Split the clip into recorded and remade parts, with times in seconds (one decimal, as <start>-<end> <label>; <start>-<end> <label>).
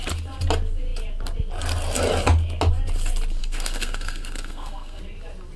0.0-3.4 recorded; 3.4-5.0 remade; 5.0-5.6 recorded